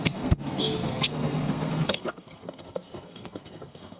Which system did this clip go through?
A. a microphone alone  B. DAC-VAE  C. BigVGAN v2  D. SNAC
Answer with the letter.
D